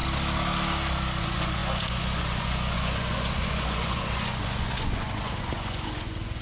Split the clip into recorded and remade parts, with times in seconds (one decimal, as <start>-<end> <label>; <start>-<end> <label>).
0.0-1.2 recorded; 1.2-6.4 remade